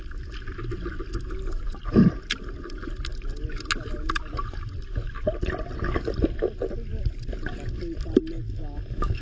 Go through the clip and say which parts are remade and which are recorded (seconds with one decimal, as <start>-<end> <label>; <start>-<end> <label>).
0.0-9.2 recorded